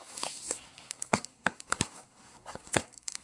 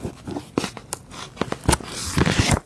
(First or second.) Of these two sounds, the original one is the second